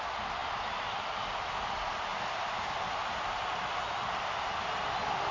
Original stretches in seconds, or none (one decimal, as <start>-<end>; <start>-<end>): 0.0-0.4; 1.5-2.1; 4.0-5.3